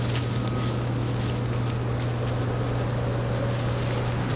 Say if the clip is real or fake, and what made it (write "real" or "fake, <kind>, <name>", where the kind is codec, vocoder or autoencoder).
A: real